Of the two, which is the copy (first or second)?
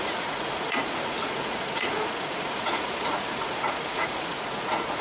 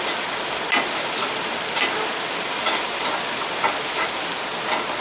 first